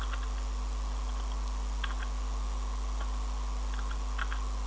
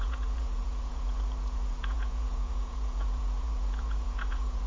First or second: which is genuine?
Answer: first